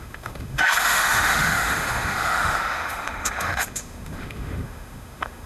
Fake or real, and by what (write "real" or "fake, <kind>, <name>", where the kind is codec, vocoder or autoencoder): fake, autoencoder, DAC-VAE